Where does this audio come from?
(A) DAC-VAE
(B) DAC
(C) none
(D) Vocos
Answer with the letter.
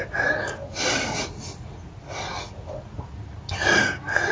C